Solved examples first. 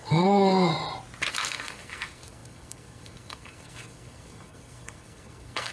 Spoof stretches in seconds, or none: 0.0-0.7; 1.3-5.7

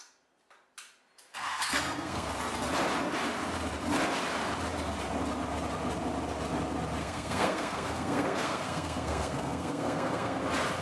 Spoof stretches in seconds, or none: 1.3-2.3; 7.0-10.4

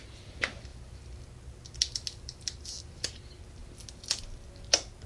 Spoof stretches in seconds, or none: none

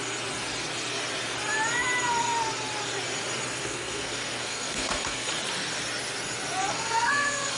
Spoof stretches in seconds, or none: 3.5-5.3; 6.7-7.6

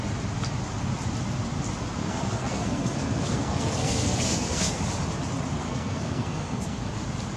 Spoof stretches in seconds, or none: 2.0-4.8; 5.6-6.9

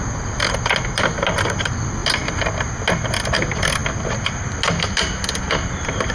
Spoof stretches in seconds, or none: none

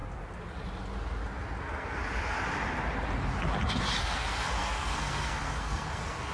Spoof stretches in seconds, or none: 1.6-2.0; 4.0-6.3

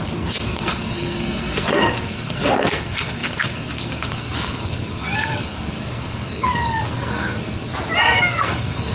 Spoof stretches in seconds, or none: 0.0-7.7; 8.2-8.9